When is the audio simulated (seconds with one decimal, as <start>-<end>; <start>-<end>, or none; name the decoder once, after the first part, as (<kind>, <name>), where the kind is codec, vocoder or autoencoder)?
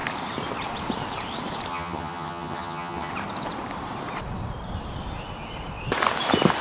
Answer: 1.7-3.1 (vocoder, HiFi-GAN)